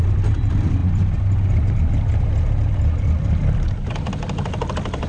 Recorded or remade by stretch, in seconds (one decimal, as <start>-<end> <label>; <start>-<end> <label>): 0.0-5.1 recorded